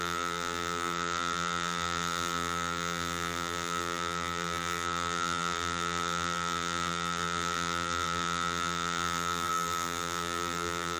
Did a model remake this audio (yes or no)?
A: yes